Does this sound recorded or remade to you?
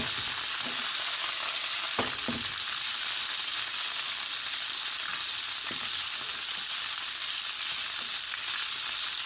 recorded